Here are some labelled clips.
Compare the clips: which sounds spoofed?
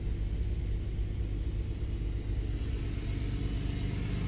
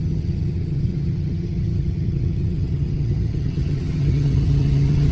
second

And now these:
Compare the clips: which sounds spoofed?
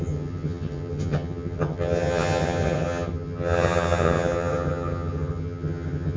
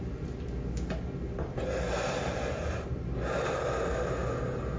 first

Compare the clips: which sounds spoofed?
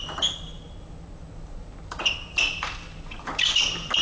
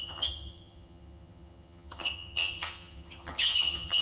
second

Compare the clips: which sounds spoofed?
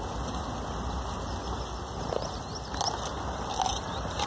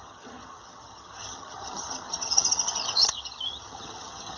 second